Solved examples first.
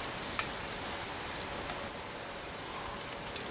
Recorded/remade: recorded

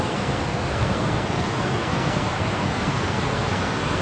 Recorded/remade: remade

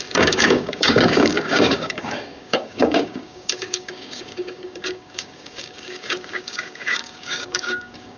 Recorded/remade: remade